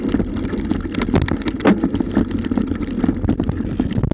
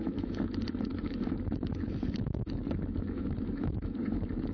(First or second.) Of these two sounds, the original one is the first